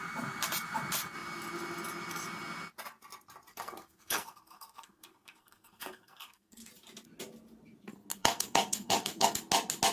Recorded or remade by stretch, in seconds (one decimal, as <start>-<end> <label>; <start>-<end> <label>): 0.0-3.5 recorded; 3.5-6.7 remade; 6.7-8.1 recorded; 8.1-9.4 remade; 9.4-9.9 recorded